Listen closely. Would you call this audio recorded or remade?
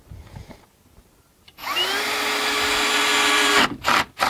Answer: recorded